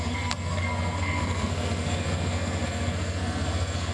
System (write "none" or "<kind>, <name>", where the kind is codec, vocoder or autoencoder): codec, SNAC